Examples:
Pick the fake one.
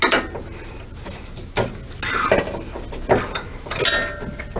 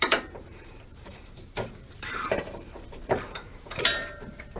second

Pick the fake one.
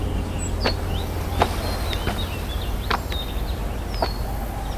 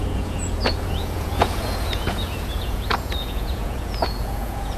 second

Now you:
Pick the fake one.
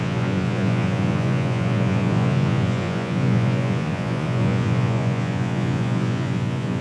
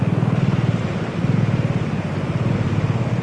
first